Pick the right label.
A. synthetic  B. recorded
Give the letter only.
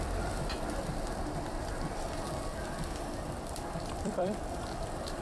A